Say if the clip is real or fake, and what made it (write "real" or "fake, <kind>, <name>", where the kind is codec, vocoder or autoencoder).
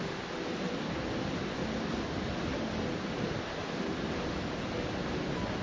real